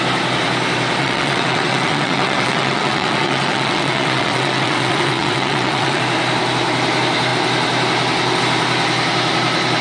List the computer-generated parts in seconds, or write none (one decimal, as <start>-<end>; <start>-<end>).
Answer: 1.0-6.0